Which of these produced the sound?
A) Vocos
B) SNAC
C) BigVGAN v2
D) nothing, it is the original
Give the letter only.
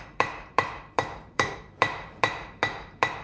C